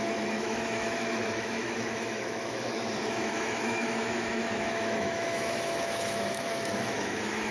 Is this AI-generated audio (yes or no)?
yes